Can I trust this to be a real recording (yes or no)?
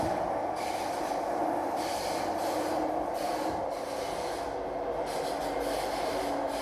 yes